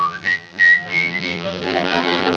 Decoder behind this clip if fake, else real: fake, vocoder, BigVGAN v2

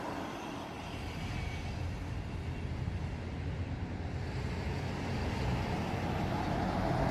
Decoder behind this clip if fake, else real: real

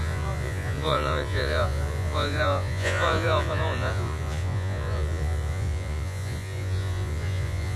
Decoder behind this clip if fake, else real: fake, vocoder, Vocos